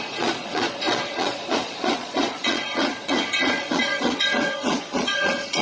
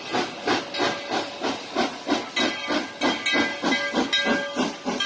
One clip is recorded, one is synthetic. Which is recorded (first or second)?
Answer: second